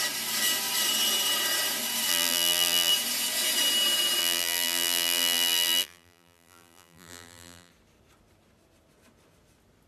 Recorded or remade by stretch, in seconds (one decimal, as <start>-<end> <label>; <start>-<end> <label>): 0.0-2.1 recorded; 2.1-2.9 remade; 2.9-4.2 recorded; 4.2-7.7 remade; 7.7-9.9 recorded